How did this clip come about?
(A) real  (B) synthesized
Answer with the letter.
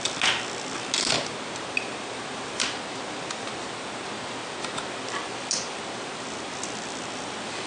A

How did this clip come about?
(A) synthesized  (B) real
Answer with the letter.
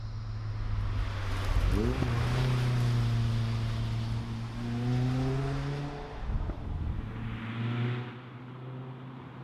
B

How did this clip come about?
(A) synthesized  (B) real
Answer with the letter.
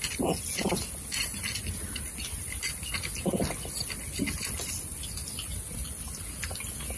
B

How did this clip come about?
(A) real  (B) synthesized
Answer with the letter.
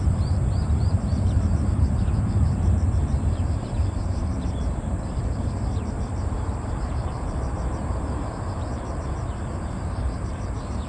B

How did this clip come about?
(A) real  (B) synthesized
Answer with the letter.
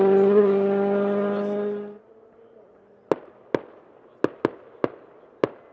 A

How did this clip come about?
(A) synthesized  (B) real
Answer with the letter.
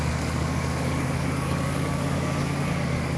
A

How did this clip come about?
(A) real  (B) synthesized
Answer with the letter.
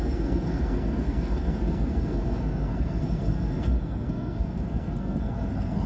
B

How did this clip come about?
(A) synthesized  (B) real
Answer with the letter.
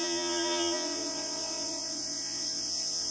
A